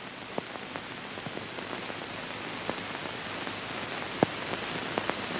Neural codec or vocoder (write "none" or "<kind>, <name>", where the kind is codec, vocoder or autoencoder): none